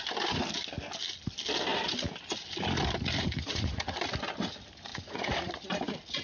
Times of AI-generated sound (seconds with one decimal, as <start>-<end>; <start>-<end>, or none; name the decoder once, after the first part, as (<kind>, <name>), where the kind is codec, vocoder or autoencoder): 3.2-4.0 (vocoder, Vocos); 4.9-5.5